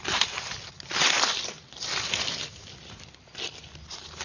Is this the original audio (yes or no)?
yes